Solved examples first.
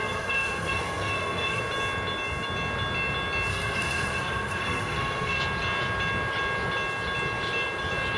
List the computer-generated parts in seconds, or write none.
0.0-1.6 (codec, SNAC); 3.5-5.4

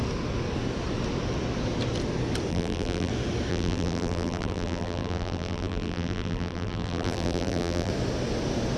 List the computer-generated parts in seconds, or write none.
2.5-3.1 (vocoder, BigVGAN v2); 3.5-7.9

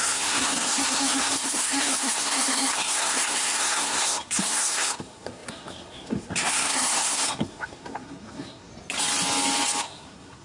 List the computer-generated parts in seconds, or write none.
0.0-8.7 (codec, SNAC); 9.8-10.4

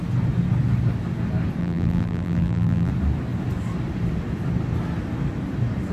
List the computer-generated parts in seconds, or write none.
1.6-2.9 (vocoder, BigVGAN v2)

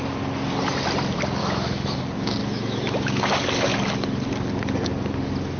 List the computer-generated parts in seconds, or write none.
1.4-2.0 (autoencoder, DAC-VAE); 2.4-3.3

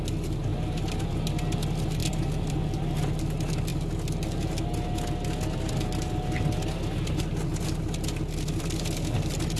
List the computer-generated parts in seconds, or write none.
2.0-3.2 (vocoder, BigVGAN v2)

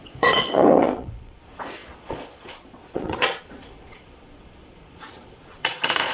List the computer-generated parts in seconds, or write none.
0.0-6.1 (vocoder, Vocos)